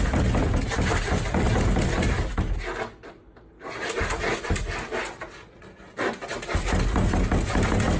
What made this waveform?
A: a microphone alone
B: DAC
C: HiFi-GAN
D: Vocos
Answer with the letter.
A